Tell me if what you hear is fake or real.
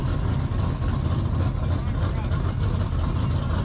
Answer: real